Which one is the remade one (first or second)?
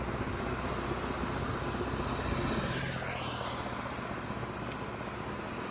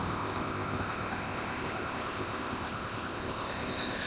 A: second